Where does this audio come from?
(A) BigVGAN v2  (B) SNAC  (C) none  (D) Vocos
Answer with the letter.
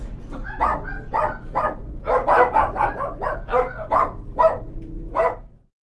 C